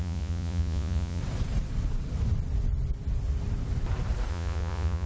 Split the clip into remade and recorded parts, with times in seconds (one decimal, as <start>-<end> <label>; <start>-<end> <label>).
0.0-1.2 remade; 1.2-4.3 recorded; 4.3-5.1 remade